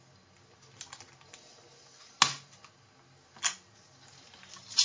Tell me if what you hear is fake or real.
real